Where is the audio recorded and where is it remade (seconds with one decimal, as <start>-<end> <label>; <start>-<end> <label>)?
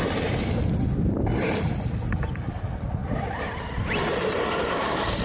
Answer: 0.0-3.0 remade; 3.0-4.0 recorded; 4.0-5.2 remade